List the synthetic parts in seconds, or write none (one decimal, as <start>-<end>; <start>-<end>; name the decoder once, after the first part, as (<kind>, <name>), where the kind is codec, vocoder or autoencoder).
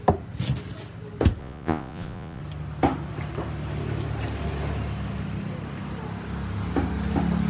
1.4-2.4 (vocoder, Vocos)